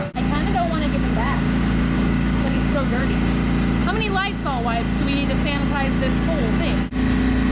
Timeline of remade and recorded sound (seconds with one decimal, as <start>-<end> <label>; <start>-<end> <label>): 0.0-0.6 recorded; 0.6-3.0 remade; 3.0-7.5 recorded